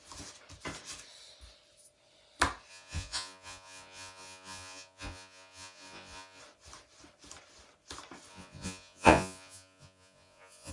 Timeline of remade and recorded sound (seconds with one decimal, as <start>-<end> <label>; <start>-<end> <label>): 0.0-2.7 recorded; 2.7-6.4 remade; 6.4-8.3 recorded; 8.3-10.7 remade